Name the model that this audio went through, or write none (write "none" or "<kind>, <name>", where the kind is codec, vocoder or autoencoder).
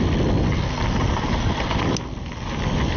none